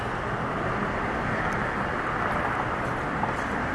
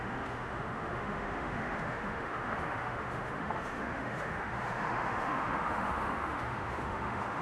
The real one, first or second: first